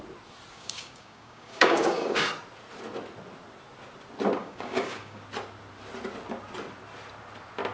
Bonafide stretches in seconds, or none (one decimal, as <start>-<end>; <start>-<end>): 0.0-0.5; 2.3-4.4; 5.2-7.7